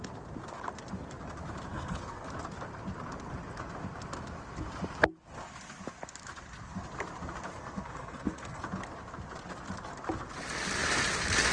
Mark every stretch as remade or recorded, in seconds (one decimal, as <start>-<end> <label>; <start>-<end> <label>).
0.0-1.7 recorded; 1.7-2.3 remade; 2.3-7.5 recorded; 7.5-8.6 remade; 8.6-11.5 recorded